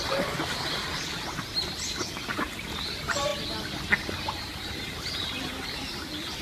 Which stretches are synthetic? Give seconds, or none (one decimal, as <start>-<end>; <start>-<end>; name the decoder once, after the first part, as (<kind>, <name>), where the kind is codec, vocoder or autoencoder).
0.0-3.3 (vocoder, BigVGAN v2); 4.4-6.4